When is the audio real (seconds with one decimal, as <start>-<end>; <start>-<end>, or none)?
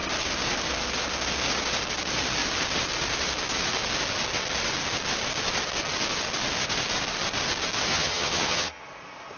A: 0.0-7.9; 8.8-9.4